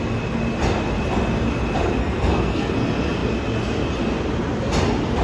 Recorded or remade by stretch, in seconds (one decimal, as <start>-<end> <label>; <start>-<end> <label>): 0.0-2.0 recorded; 2.0-2.7 remade; 2.7-5.2 recorded